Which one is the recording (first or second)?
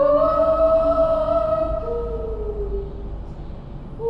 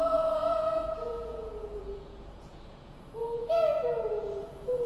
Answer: first